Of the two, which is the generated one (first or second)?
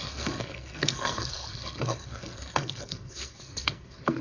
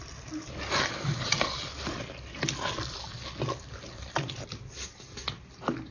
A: first